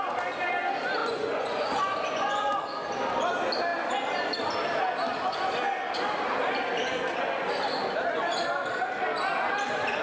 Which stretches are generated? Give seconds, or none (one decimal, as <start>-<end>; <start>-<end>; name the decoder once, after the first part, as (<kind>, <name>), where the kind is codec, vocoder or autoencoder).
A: 1.0-2.6 (vocoder, Vocos)